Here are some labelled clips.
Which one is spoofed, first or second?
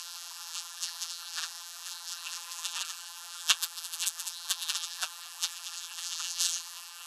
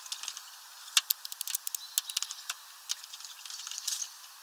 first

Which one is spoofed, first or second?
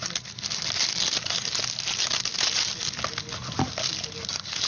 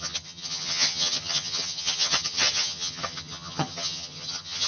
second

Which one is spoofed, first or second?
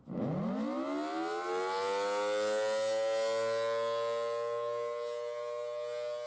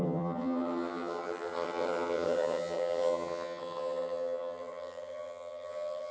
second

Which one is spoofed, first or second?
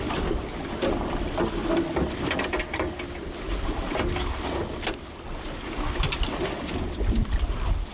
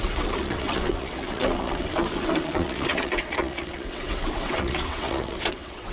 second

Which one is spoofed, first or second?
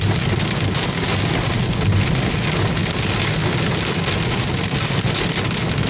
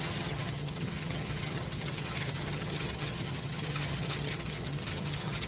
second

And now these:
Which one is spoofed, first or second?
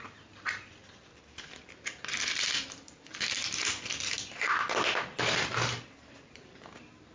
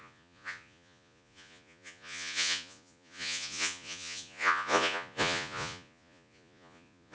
second